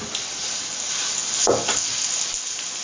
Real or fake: real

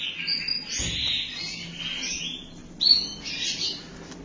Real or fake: real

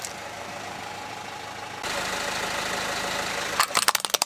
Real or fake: real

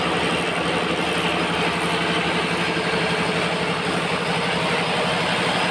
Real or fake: real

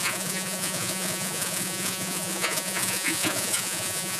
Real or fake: fake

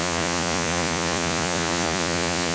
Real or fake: fake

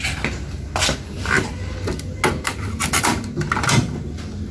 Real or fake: real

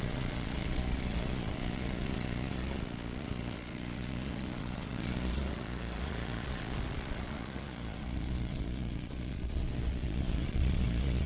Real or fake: fake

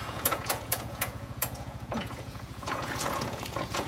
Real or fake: fake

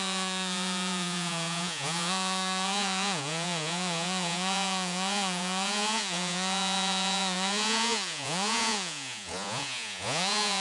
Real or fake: fake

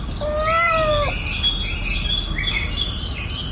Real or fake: real